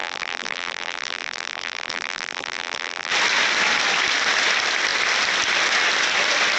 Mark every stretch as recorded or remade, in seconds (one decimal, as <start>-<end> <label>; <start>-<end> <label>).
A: 0.0-3.1 remade; 3.1-6.6 recorded